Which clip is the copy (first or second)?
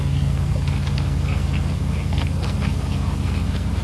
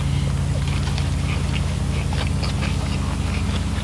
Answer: first